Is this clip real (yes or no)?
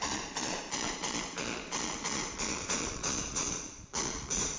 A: no